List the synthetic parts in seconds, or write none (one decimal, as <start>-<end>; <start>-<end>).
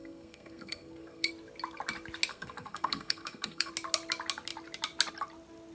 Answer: 0.0-1.3; 2.3-3.7